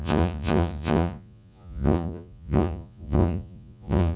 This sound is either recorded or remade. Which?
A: remade